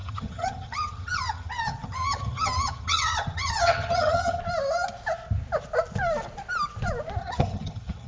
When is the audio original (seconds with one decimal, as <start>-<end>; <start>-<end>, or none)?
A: 4.4-7.2